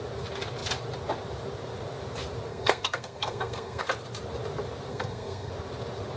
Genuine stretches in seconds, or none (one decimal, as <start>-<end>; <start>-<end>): 0.0-2.5; 3.8-4.9; 5.5-6.2